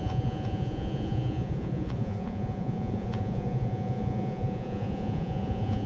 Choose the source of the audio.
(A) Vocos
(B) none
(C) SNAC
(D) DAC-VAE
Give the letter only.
A